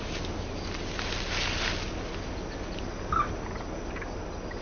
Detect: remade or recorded recorded